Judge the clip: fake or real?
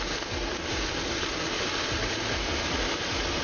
real